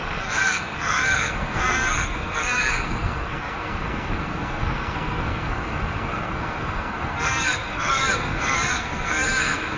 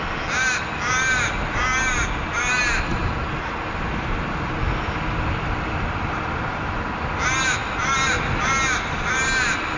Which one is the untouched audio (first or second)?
second